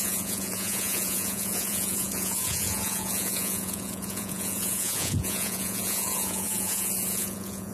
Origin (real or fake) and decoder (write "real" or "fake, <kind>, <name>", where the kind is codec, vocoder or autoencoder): fake, vocoder, Vocos